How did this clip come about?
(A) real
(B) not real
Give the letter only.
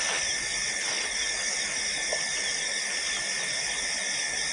A